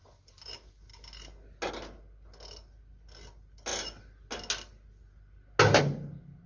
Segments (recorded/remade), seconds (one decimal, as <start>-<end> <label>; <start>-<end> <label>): 0.0-6.5 recorded